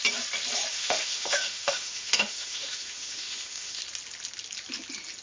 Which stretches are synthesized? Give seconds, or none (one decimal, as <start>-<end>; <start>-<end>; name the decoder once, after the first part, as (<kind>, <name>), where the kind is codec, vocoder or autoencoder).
0.7-3.8 (autoencoder, DAC-VAE)